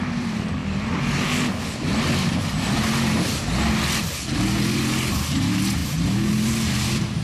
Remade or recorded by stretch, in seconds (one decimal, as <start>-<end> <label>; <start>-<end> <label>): 0.0-0.6 remade; 0.6-4.7 recorded; 4.7-7.2 remade